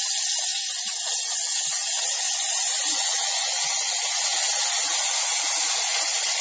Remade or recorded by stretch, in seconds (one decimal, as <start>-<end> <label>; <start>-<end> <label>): 0.0-0.5 recorded; 0.5-3.9 remade; 3.9-6.4 recorded